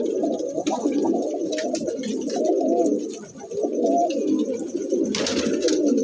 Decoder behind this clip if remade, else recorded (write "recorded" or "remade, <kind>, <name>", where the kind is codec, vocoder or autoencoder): recorded